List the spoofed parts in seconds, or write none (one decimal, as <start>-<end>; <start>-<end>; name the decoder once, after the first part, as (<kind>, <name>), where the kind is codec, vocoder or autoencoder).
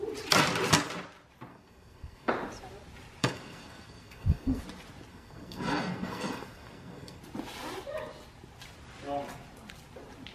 1.5-2.3 (codec, SNAC); 3.2-4.6; 5.1-7.2